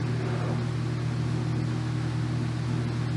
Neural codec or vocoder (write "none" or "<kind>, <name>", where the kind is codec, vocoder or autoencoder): none